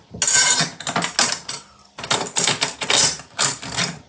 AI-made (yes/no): no